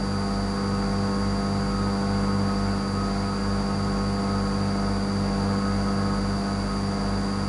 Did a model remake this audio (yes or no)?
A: no